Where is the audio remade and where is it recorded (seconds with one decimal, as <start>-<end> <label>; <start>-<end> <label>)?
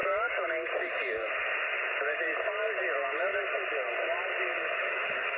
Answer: 0.0-4.5 recorded; 4.5-5.4 remade